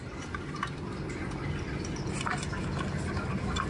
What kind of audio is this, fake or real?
real